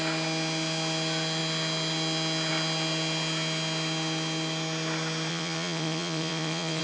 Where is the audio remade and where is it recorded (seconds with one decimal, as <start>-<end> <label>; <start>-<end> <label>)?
0.0-5.3 recorded; 5.3-6.8 remade